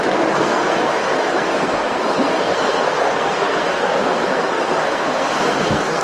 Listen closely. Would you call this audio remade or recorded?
remade